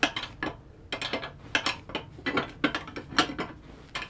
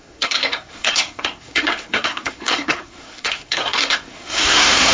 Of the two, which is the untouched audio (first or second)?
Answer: first